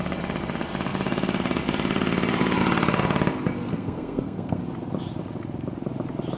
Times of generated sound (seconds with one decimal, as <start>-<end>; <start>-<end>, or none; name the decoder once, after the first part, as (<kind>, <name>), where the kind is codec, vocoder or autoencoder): 3.7-4.6 (codec, SNAC)